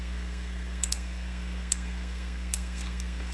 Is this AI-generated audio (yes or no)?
yes